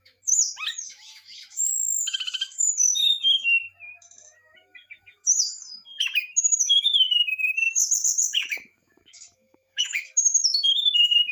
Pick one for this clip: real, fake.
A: fake